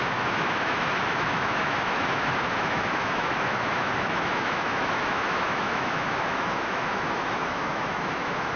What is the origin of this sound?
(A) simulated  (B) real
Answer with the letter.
A